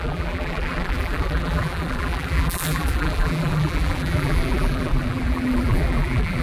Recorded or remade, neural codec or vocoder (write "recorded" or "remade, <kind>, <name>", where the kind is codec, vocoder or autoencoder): remade, vocoder, BigVGAN v2